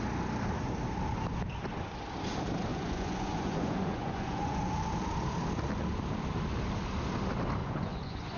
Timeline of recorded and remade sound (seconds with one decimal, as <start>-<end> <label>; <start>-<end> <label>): 0.0-2.7 recorded; 2.7-4.7 remade; 4.7-7.6 recorded; 7.6-8.4 remade